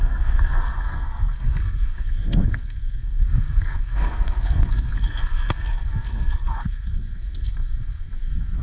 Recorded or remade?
remade